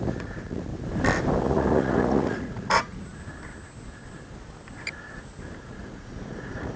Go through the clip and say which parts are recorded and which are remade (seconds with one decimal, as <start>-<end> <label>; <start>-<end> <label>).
0.0-0.7 remade; 0.7-1.4 recorded; 1.4-2.9 remade; 2.9-5.6 recorded; 5.6-6.8 remade